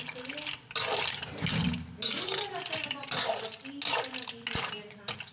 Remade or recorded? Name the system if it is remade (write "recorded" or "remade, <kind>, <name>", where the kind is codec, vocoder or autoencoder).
recorded